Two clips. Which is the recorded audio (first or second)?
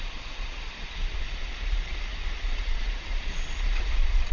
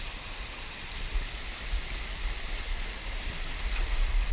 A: second